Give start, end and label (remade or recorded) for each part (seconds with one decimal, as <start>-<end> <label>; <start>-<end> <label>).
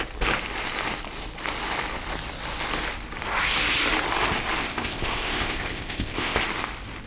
0.0-4.6 recorded; 4.6-6.4 remade; 6.4-7.1 recorded